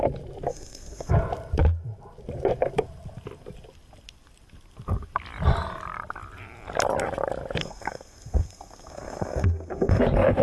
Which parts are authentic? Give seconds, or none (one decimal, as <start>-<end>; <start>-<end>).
0.0-0.5; 1.1-7.6; 10.0-10.4